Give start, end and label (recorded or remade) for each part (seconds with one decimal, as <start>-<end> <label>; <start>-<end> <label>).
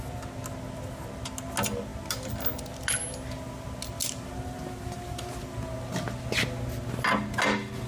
0.0-7.9 recorded